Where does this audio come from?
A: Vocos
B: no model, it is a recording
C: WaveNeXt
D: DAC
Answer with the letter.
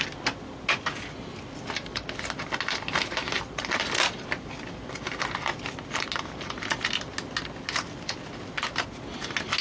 B